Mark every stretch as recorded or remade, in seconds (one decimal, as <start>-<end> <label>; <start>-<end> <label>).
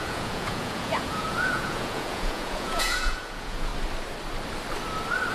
0.0-3.7 remade; 3.7-5.3 recorded